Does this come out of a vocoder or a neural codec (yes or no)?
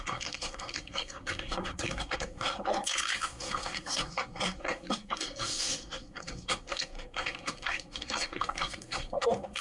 yes